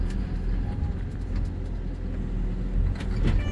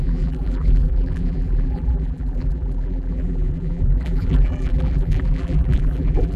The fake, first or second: second